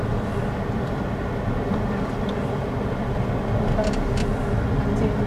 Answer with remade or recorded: recorded